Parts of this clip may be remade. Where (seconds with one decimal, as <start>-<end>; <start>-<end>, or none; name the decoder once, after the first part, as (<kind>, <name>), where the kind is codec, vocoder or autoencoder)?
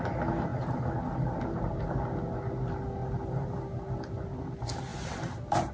3.0-4.1 (vocoder, BigVGAN v2); 4.9-5.7